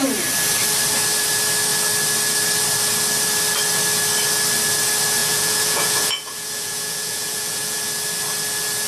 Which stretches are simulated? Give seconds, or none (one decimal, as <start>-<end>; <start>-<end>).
5.2-7.8